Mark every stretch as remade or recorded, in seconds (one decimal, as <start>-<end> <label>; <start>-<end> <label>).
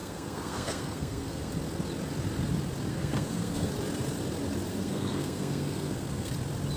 0.0-1.5 remade; 1.5-2.9 recorded; 2.9-3.7 remade; 3.7-4.7 recorded; 4.7-6.3 remade; 6.3-6.8 recorded